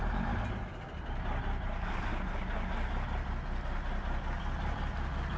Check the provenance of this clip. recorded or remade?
recorded